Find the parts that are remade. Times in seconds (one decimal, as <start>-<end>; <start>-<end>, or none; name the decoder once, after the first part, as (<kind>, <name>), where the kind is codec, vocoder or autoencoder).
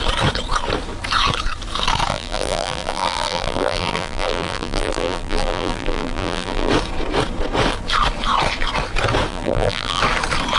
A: 2.1-6.7 (vocoder, BigVGAN v2); 9.3-10.0